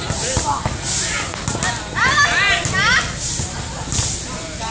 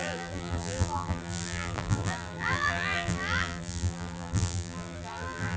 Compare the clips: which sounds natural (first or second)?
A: first